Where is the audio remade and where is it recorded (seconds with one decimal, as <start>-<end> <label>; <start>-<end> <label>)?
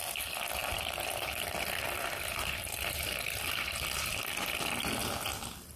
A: 0.0-0.6 recorded; 0.6-4.1 remade; 4.1-5.0 recorded; 5.0-5.8 remade